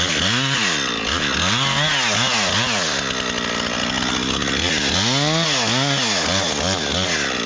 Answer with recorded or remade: recorded